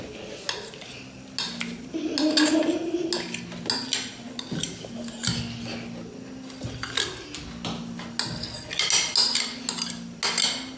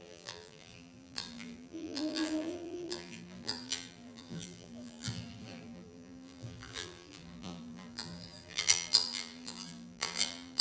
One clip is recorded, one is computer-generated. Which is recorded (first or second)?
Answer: first